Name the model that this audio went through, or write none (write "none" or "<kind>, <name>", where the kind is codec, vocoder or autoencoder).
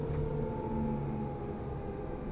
none